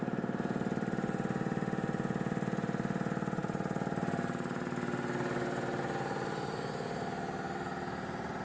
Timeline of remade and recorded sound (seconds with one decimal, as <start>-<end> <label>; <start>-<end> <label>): 0.0-8.4 recorded